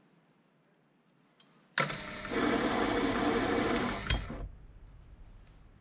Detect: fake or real real